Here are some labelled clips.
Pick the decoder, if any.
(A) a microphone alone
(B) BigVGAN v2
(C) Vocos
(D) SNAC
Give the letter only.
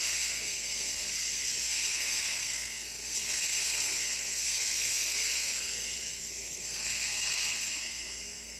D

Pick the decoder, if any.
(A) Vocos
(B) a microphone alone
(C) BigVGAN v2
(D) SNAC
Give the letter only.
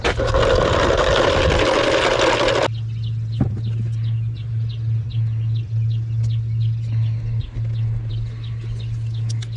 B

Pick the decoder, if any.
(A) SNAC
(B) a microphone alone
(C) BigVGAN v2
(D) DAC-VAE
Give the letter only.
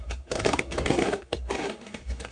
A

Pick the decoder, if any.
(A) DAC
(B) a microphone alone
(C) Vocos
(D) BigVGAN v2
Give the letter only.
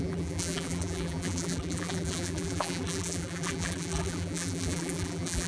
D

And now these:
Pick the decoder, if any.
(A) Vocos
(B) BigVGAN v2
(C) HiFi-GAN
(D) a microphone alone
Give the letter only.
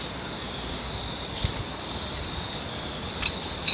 D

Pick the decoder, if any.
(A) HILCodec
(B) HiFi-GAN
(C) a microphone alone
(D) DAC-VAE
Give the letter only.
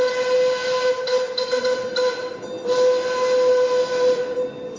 C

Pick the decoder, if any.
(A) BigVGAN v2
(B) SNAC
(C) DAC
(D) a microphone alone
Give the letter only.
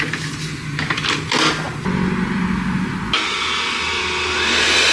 D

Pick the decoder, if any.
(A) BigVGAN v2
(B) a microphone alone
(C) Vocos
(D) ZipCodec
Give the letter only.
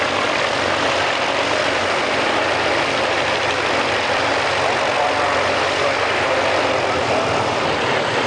A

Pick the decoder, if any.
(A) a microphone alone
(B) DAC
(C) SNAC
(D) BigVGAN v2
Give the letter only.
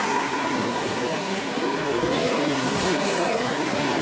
C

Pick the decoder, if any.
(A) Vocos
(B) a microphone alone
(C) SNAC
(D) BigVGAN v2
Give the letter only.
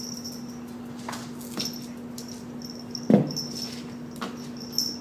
B